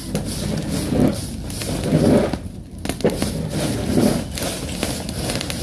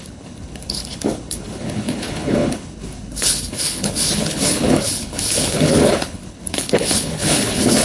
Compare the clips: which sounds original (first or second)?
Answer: first